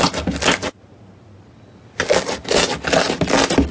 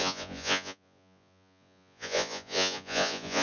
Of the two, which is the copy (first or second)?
second